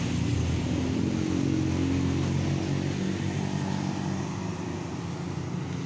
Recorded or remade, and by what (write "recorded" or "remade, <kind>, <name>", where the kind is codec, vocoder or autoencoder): recorded